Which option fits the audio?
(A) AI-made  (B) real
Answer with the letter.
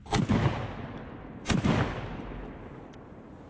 B